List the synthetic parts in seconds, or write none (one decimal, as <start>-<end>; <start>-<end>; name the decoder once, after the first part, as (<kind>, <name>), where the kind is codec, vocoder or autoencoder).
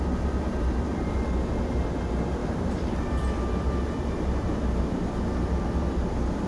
2.4-6.5 (vocoder, BigVGAN v2)